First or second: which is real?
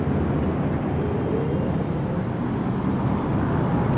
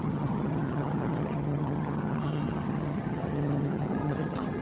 first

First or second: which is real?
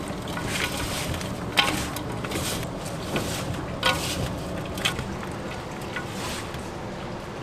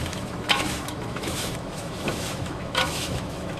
first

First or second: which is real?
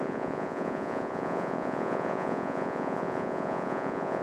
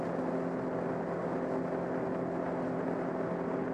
second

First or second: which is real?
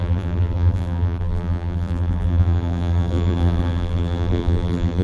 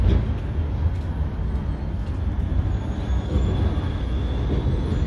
second